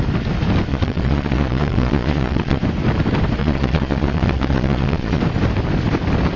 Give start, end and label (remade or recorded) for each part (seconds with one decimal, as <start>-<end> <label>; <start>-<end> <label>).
0.0-0.7 recorded; 0.7-2.6 remade; 2.6-3.4 recorded; 3.4-5.2 remade; 5.2-6.4 recorded